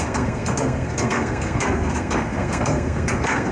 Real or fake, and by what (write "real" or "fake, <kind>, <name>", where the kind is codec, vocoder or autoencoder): fake, codec, SNAC